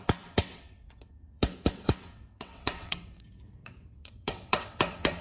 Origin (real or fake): fake